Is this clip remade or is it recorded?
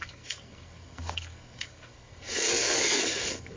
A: remade